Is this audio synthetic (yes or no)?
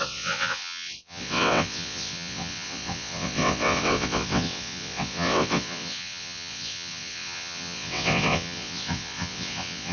yes